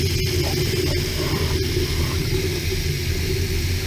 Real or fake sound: real